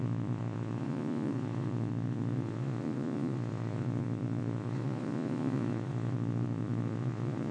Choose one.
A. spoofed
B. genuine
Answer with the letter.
A